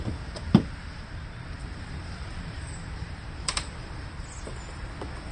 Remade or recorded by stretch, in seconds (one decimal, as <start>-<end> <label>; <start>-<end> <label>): 0.0-1.6 recorded; 1.6-4.8 remade; 4.8-5.3 recorded